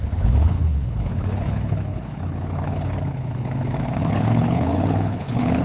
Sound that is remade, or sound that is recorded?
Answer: remade